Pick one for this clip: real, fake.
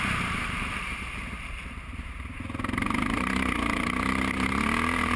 fake